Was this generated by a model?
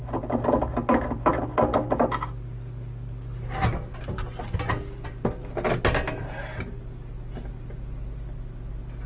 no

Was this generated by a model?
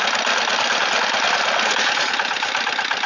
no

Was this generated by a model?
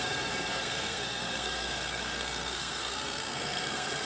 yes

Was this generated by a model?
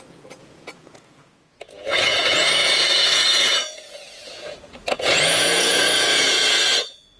yes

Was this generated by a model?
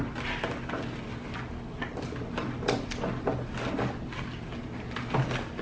no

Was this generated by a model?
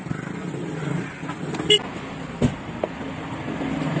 no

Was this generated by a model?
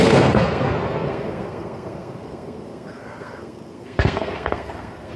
yes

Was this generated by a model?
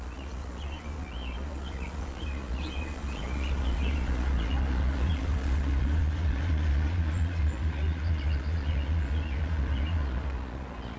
yes